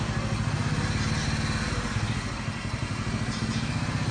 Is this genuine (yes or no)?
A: yes